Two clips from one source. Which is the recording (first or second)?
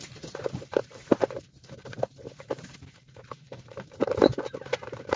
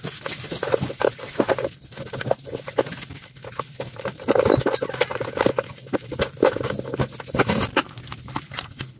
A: second